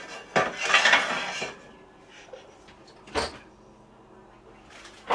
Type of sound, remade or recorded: recorded